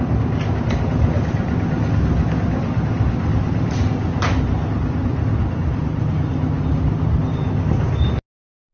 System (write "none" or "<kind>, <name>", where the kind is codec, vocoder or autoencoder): none